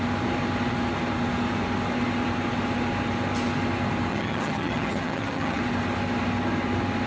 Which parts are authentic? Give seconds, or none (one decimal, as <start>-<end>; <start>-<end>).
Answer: 0.0-4.1; 5.6-7.1